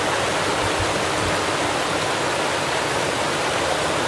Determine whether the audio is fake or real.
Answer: real